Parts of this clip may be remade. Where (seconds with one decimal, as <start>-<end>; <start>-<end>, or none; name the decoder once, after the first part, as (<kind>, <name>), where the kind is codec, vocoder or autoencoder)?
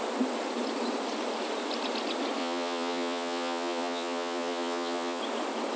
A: 2.4-5.2 (vocoder, Vocos)